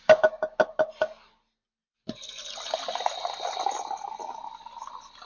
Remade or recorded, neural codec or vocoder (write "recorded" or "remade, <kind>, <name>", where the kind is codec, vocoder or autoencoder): recorded